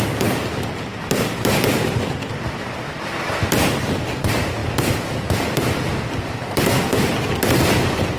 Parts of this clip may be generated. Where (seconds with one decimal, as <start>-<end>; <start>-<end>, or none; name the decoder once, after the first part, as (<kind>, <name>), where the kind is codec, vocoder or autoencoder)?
none